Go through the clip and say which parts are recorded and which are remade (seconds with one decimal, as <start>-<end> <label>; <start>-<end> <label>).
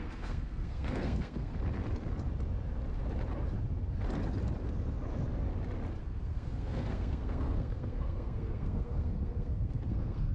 0.0-1.5 remade; 1.5-6.0 recorded; 6.0-10.3 remade